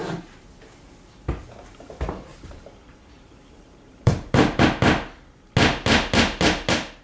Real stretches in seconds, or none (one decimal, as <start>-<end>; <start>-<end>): 0.0-2.3; 4.6-7.0